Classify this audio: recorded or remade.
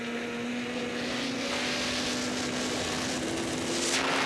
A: recorded